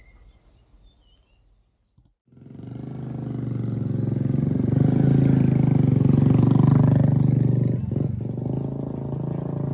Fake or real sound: real